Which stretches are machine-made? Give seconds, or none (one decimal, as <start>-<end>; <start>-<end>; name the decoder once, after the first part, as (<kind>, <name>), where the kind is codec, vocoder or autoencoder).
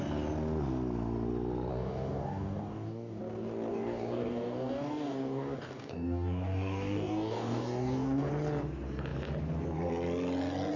1.7-3.2 (codec, DAC); 3.7-8.3